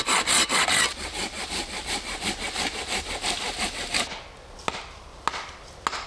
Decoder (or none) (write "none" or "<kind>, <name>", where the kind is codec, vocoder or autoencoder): none